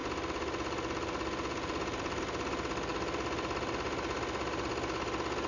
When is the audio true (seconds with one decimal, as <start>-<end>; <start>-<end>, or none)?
2.2-5.5